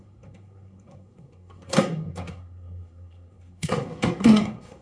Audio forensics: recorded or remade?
remade